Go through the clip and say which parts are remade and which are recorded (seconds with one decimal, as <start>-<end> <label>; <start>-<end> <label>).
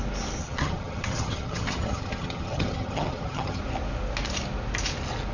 0.0-0.4 recorded; 0.4-3.6 remade; 3.6-5.3 recorded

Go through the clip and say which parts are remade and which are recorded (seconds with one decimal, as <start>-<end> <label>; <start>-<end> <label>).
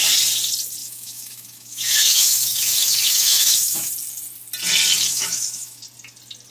0.0-0.8 recorded; 0.8-3.9 remade; 3.9-5.1 recorded; 5.1-5.8 remade; 5.8-6.5 recorded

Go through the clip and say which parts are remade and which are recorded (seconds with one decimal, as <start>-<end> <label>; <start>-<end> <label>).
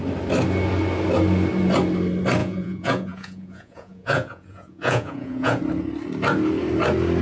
0.0-2.4 recorded; 2.4-5.6 remade; 5.6-7.2 recorded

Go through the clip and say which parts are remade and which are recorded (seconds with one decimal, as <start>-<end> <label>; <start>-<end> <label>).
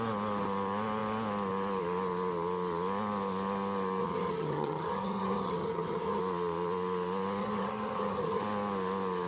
0.0-4.0 recorded; 4.0-6.2 remade; 6.2-7.4 recorded; 7.4-8.4 remade; 8.4-9.3 recorded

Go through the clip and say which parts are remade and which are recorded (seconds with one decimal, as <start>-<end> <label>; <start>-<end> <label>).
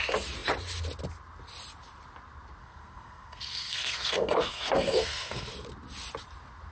0.0-2.6 recorded; 2.6-5.5 remade; 5.5-6.7 recorded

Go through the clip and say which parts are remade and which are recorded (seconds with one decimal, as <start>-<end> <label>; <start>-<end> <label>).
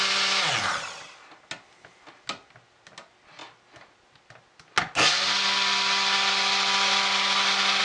0.0-7.8 recorded